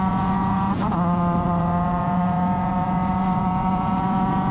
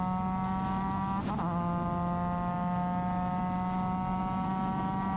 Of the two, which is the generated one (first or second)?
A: first